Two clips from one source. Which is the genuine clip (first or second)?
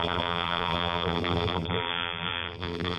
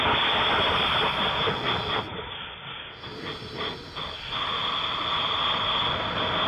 second